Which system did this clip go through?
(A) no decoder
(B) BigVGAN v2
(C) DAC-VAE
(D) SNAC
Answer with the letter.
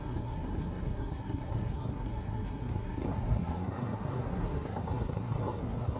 D